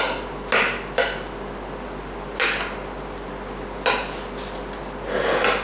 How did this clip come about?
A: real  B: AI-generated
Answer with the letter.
A